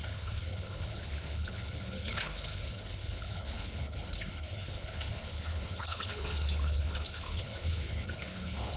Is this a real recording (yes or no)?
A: no